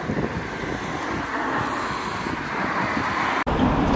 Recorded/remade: recorded